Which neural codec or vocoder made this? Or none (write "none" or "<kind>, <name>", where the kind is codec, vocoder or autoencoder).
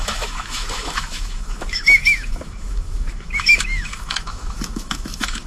autoencoder, DAC-VAE